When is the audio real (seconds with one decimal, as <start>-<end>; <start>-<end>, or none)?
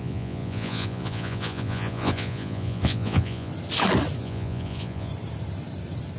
3.5-4.2; 5.1-6.2